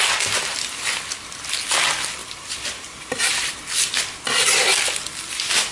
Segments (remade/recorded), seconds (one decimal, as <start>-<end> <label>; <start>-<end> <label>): 0.0-2.2 recorded; 2.2-3.9 remade; 3.9-5.7 recorded

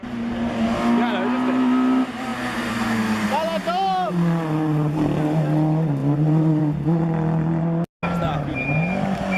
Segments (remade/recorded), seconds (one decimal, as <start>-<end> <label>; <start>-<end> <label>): 0.0-6.0 recorded; 6.0-6.6 remade; 6.6-9.4 recorded